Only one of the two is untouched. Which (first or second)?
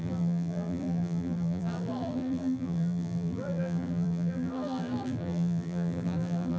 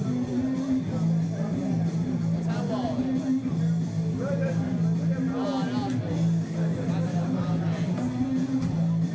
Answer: second